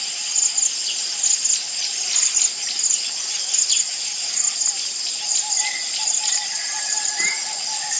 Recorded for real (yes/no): yes